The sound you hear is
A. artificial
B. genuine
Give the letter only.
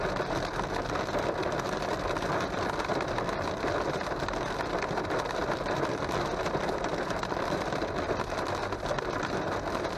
B